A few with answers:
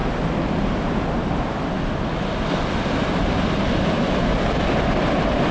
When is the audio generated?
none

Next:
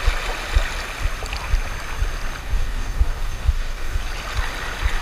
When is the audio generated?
2.4-4.0 (codec, DAC)